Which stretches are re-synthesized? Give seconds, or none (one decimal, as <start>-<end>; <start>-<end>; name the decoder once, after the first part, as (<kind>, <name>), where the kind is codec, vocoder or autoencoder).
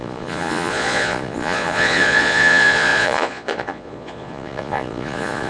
0.0-5.5 (vocoder, Vocos)